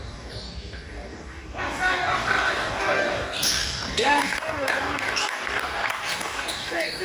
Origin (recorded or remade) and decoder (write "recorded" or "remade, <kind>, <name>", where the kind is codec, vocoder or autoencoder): remade, codec, DAC